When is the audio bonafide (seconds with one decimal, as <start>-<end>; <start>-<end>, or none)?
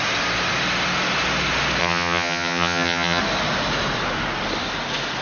0.0-1.8; 3.2-5.2